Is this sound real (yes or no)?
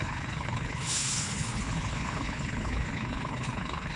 no